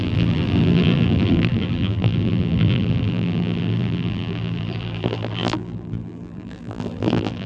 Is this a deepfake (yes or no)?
yes